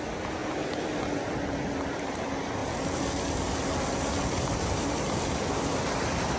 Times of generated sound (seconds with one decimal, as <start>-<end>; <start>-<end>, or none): none